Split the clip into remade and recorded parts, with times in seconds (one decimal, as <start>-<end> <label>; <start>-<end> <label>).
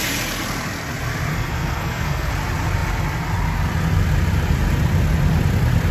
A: 0.0-1.3 recorded; 1.3-2.3 remade; 2.3-5.9 recorded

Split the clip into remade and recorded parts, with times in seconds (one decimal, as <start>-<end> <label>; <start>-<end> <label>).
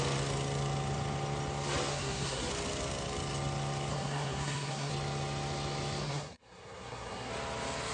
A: 0.0-1.9 recorded; 1.9-2.5 remade; 2.5-3.9 recorded; 3.9-4.9 remade; 4.9-6.0 recorded; 6.0-7.3 remade; 7.3-7.9 recorded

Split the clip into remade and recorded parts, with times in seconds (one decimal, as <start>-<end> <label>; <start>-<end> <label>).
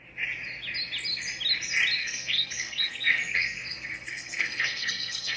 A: 0.0-2.0 recorded; 2.0-5.4 remade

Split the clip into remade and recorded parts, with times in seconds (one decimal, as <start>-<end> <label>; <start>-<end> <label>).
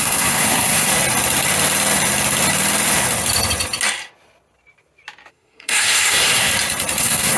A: 0.0-0.9 remade; 0.9-5.3 recorded; 5.3-6.5 remade; 6.5-7.0 recorded; 7.0-7.4 remade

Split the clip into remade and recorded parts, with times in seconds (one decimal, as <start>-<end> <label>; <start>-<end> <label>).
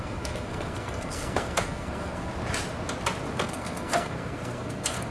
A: 0.0-2.3 remade; 2.3-3.3 recorded; 3.3-5.1 remade